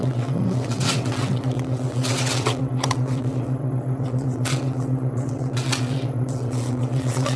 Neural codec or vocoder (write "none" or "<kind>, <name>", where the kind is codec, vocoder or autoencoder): vocoder, WaveNeXt